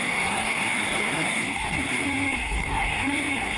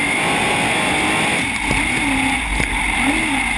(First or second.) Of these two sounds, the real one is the second